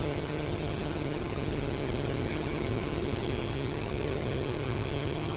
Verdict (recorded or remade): remade